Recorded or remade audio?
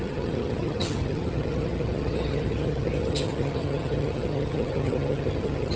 remade